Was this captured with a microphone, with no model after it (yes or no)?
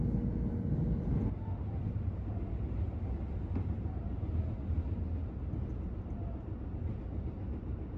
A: yes